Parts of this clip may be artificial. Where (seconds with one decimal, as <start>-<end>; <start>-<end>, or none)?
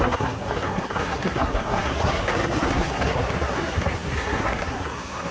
0.0-5.3